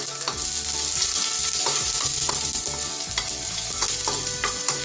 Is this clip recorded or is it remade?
recorded